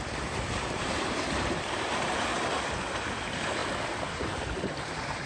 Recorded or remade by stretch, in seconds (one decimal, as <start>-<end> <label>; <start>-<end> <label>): 0.0-2.3 remade; 2.3-3.2 recorded; 3.2-3.6 remade; 3.6-4.1 recorded; 4.1-5.3 remade